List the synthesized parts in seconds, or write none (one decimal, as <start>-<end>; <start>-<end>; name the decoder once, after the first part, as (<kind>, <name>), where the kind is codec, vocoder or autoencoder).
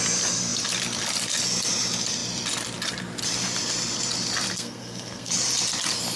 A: 4.5-5.3 (codec, SNAC)